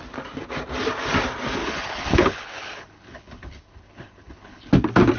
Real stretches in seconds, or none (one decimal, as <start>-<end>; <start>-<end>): 0.0-1.6; 4.7-5.2